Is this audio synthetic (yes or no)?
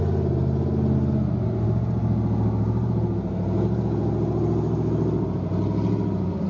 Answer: no